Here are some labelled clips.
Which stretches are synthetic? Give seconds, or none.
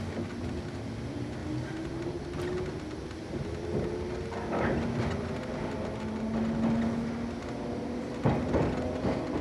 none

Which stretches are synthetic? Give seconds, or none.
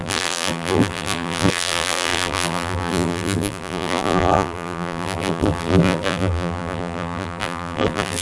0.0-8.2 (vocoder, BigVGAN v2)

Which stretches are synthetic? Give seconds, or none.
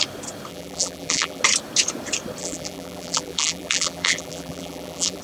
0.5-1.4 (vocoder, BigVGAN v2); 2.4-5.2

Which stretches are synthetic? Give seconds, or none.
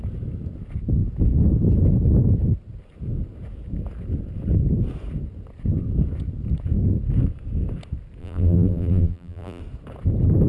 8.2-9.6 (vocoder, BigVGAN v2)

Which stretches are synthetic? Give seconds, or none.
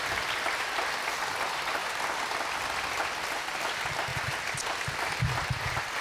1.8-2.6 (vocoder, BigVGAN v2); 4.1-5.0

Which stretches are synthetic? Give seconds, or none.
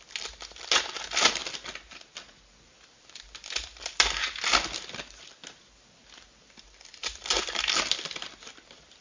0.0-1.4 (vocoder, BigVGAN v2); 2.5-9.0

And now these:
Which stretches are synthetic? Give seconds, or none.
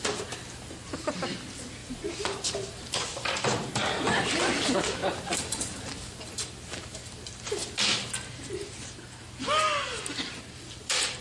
1.8-4.3 (vocoder, BigVGAN v2); 5.0-5.6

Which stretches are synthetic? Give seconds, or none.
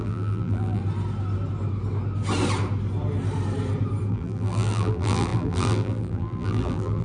0.0-0.8 (vocoder, BigVGAN v2); 4.1-7.0